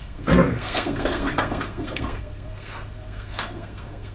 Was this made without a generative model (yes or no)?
no